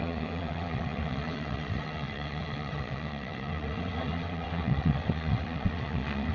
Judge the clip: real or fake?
fake